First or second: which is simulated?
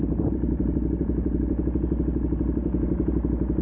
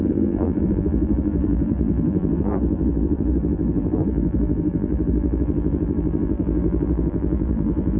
second